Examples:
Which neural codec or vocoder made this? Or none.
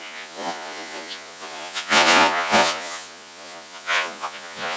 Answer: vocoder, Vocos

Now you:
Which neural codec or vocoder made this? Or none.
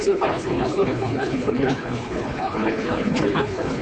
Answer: codec, HILCodec